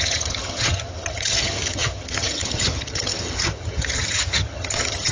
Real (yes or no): no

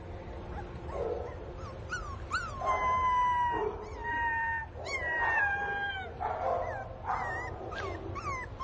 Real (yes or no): yes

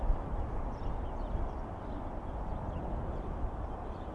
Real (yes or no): yes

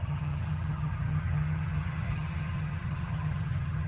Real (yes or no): no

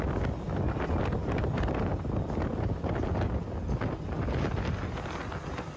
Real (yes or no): yes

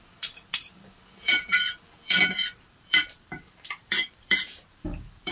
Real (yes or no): no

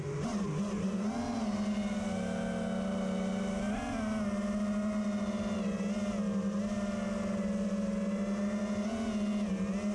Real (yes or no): yes